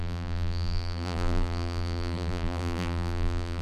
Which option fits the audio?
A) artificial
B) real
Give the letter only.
A